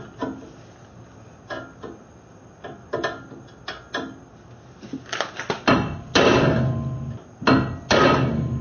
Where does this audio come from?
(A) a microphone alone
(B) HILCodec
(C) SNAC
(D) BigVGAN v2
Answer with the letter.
A